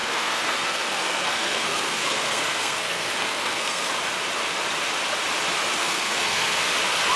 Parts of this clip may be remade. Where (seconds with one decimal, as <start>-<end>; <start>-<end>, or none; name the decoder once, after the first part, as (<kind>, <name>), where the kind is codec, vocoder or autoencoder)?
0.0-3.9 (codec, SNAC); 5.8-6.6